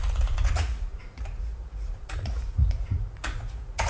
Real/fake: fake